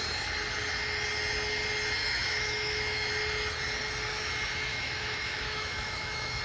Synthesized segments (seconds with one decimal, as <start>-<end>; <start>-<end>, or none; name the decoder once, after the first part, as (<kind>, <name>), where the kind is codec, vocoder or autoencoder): 2.0-3.1 (autoencoder, DAC-VAE); 4.7-6.4